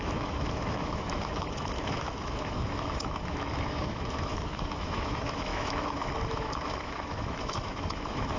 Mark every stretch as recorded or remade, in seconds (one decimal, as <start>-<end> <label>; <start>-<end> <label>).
0.0-8.4 remade